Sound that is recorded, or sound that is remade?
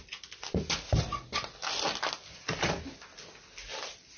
recorded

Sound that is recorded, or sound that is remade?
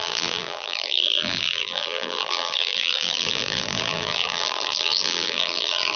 remade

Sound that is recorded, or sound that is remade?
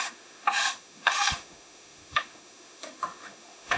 remade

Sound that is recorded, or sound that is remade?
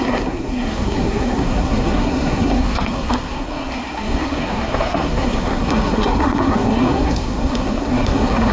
remade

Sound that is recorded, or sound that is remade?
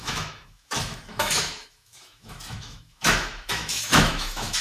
remade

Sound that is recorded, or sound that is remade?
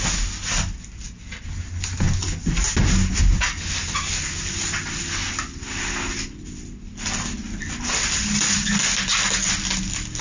recorded